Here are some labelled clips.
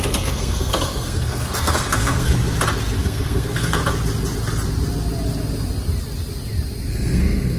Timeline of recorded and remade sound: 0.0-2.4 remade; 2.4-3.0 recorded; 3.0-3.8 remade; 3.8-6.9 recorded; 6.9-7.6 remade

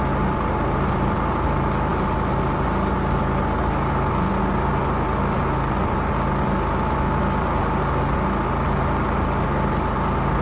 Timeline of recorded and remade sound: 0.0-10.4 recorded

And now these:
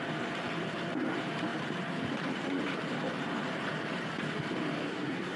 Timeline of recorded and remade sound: 0.0-4.8 recorded; 4.8-5.4 remade

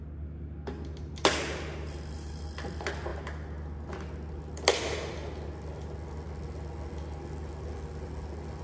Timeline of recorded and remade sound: 0.0-8.6 recorded

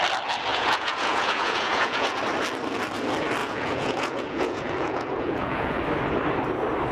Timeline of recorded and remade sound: 0.0-0.5 recorded; 0.5-2.2 remade; 2.2-3.4 recorded; 3.4-5.8 remade; 5.8-6.9 recorded

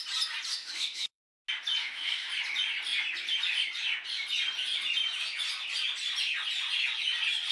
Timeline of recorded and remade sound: 0.0-0.5 recorded; 0.5-1.2 remade; 1.2-1.8 recorded; 1.8-2.3 remade; 2.3-7.5 recorded

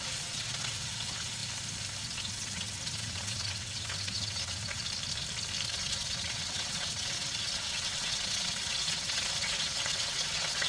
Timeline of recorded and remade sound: 0.0-1.4 remade; 1.4-2.0 recorded; 2.0-4.8 remade; 4.8-5.7 recorded; 5.7-10.7 remade

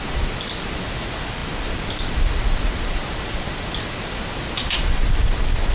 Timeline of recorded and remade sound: 0.0-5.7 recorded